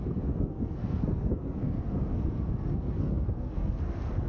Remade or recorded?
remade